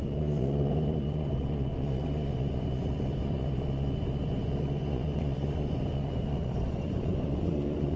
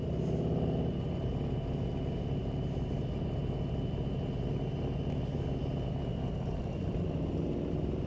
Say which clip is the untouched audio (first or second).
second